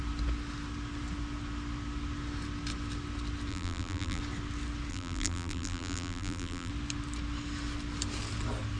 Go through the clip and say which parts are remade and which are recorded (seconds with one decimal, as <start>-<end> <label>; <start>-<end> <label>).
0.0-3.5 recorded; 3.5-4.2 remade; 4.2-4.9 recorded; 4.9-6.7 remade; 6.7-8.8 recorded